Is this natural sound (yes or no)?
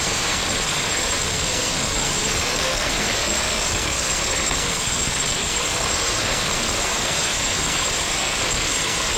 no